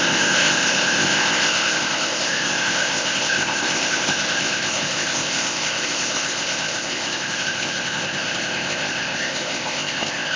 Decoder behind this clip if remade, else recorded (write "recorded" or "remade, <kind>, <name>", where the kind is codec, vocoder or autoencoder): remade, codec, ZipCodec